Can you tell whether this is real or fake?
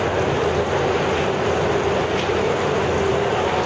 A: real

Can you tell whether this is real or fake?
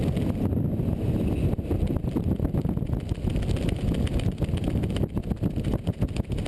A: real